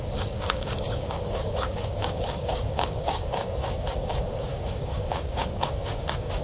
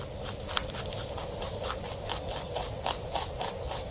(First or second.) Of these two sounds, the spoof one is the first